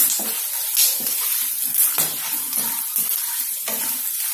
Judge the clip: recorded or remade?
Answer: recorded